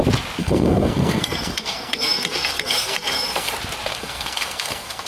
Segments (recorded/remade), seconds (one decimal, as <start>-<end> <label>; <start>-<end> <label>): 0.0-0.4 recorded; 0.4-3.5 remade; 3.5-3.9 recorded; 3.9-5.1 remade